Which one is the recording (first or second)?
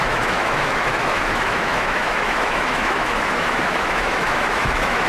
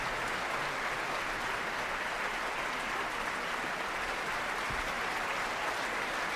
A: second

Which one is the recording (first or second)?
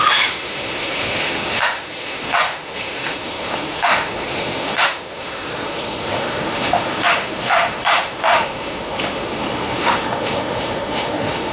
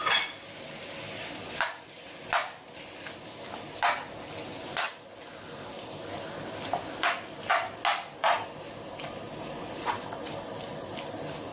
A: second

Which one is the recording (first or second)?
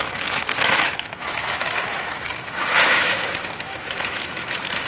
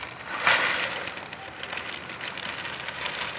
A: second